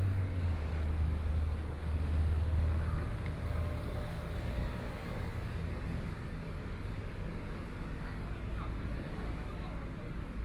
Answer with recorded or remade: remade